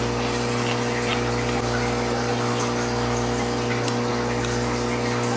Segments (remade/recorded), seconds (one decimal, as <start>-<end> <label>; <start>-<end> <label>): 0.0-5.4 recorded